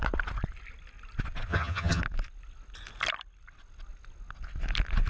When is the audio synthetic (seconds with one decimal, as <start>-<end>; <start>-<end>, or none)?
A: 1.5-2.0